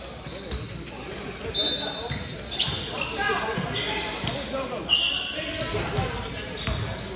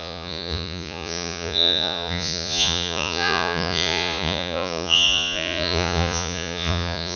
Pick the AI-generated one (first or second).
second